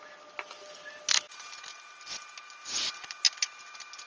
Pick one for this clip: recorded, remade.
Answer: recorded